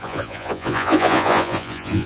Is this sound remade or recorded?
remade